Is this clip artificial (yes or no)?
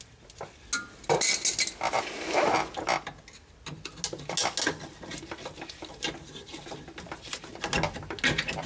no